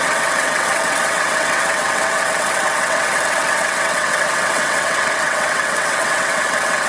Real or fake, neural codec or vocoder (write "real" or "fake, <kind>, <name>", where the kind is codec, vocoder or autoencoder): fake, vocoder, WaveNeXt